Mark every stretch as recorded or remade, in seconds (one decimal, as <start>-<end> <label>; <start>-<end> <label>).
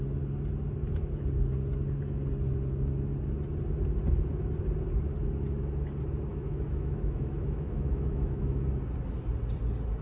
0.0-6.3 recorded; 6.3-8.6 remade; 8.6-10.0 recorded